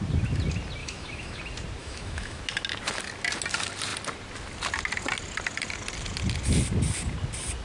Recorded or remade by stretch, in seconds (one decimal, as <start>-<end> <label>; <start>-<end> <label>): 0.0-0.8 recorded; 0.8-1.4 remade; 1.4-1.8 recorded; 1.8-2.4 remade; 2.4-7.6 recorded